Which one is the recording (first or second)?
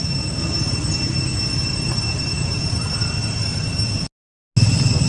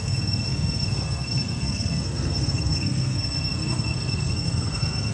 first